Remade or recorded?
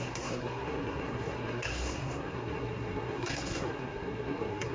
remade